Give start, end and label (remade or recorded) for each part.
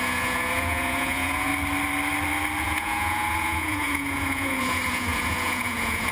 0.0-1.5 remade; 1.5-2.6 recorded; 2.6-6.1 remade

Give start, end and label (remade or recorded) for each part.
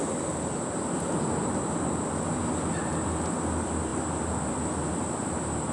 0.0-3.9 recorded; 3.9-4.5 remade; 4.5-5.7 recorded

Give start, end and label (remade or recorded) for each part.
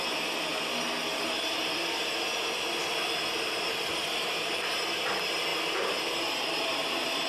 0.0-7.3 recorded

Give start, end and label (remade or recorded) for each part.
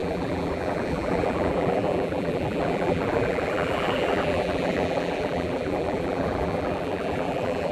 0.0-7.7 remade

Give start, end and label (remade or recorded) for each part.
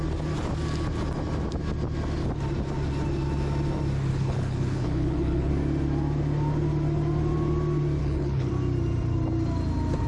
0.0-4.1 recorded; 4.1-5.5 remade; 5.5-8.0 recorded; 8.0-8.5 remade; 8.5-10.1 recorded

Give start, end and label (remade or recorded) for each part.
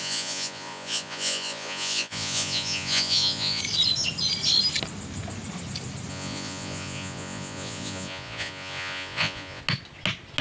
0.0-3.6 remade; 3.6-6.1 recorded; 6.1-9.6 remade; 9.6-10.4 recorded